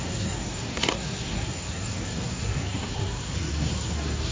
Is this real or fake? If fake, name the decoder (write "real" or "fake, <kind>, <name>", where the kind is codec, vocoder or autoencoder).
fake, codec, SNAC